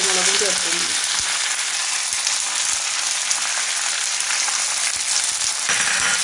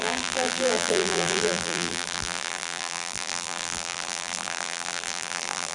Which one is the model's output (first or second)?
second